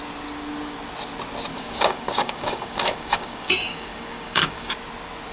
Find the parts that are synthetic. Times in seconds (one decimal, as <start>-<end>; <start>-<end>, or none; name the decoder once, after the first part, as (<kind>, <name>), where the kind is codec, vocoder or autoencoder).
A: 1.5-4.7 (codec, DAC)